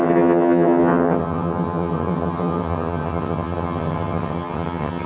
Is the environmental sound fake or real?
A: fake